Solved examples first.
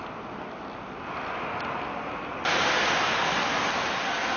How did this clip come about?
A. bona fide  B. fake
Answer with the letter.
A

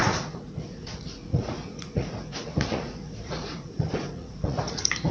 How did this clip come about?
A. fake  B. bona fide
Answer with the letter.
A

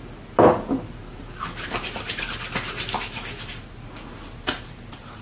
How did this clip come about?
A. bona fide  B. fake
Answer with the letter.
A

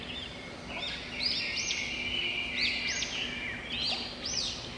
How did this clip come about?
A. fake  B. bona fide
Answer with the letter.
B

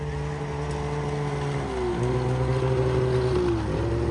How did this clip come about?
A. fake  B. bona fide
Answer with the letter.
B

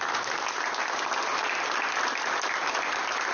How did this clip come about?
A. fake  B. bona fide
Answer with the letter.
B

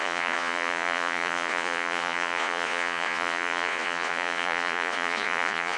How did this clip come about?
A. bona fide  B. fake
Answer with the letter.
B